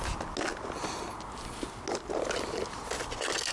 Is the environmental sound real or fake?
real